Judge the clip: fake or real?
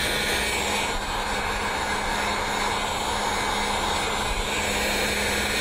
real